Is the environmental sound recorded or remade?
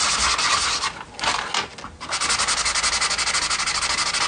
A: recorded